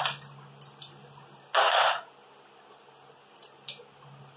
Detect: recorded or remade recorded